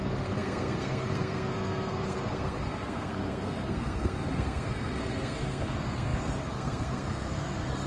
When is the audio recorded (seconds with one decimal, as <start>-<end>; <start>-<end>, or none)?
none

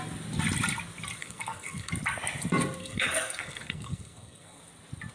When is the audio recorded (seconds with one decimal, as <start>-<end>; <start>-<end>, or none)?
0.0-1.2; 1.9-2.8; 4.6-5.1